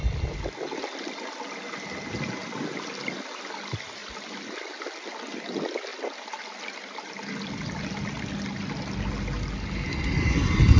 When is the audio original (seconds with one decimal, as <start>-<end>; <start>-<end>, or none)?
0.0-10.8